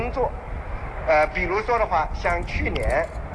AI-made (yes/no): no